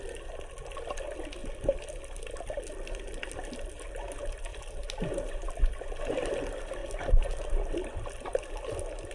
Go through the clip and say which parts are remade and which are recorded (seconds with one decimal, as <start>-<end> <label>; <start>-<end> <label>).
0.0-4.5 recorded; 4.5-5.1 remade; 5.1-9.1 recorded